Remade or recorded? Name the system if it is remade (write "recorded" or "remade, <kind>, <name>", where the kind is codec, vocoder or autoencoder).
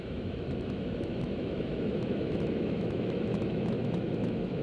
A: remade, autoencoder, DAC-VAE